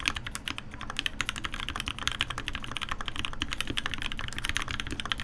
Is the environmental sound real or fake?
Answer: real